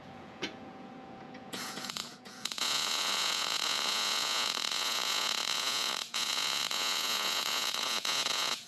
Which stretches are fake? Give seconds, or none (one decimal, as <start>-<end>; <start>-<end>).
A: 0.0-8.7